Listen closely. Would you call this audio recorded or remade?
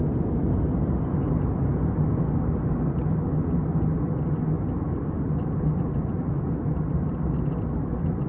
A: recorded